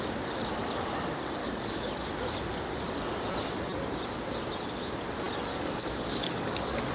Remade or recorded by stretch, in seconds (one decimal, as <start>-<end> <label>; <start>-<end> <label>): 0.0-1.4 recorded; 1.4-1.9 remade; 1.9-5.5 recorded; 5.5-6.9 remade